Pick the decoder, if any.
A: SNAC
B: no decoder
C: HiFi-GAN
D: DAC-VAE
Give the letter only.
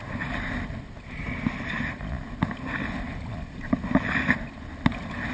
B